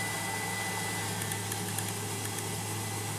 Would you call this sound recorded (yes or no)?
yes